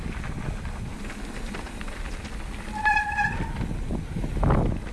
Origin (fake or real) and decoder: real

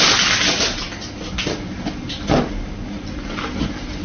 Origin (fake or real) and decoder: real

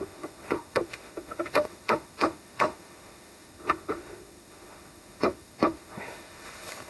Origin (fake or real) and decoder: fake, autoencoder, DAC-VAE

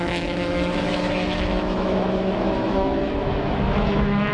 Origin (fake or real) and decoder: fake, autoencoder, DAC-VAE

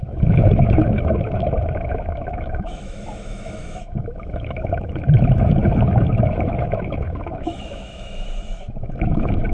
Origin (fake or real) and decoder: fake, autoencoder, DAC-VAE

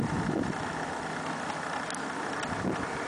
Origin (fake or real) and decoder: real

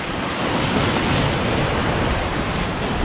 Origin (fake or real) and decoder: real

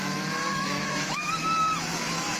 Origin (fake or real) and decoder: fake, autoencoder, DAC-VAE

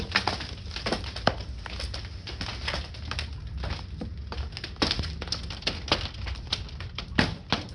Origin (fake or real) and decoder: real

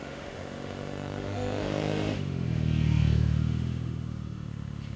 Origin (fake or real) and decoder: fake, autoencoder, DAC-VAE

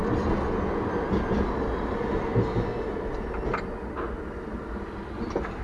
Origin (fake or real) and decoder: real